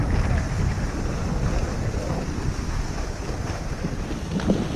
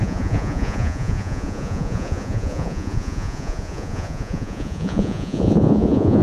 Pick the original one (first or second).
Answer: first